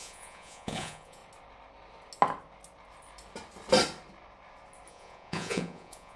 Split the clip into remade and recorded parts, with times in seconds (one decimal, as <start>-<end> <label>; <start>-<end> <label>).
0.0-1.2 remade; 1.2-4.9 recorded; 4.9-6.2 remade